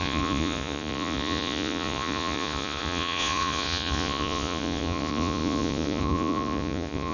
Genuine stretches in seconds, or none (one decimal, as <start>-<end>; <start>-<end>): none